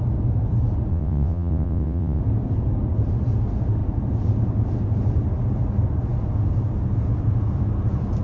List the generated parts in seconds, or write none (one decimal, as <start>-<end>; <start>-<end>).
0.9-2.2